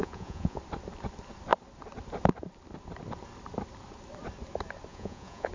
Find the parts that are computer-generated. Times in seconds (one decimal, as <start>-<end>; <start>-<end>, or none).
0.0-0.6; 4.9-5.5